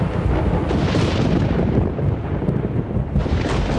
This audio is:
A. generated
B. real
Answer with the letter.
B